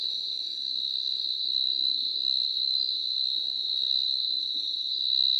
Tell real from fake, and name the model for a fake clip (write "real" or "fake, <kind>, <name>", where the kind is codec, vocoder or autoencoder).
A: fake, autoencoder, DAC-VAE